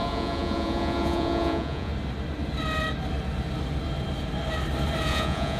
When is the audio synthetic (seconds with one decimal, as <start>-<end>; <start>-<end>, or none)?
0.0-1.9; 5.1-5.6